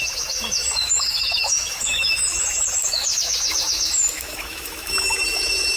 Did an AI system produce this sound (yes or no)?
yes